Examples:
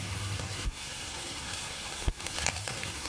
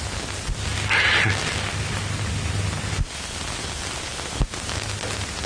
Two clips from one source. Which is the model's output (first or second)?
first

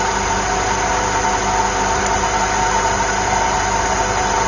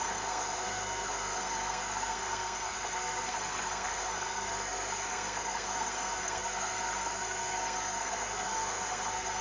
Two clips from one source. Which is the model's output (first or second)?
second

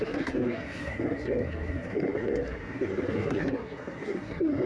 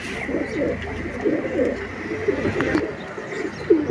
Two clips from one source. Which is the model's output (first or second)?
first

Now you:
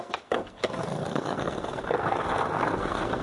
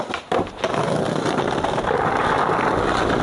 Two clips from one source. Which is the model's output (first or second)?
first